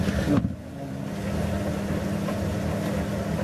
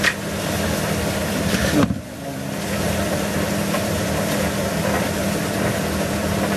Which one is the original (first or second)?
first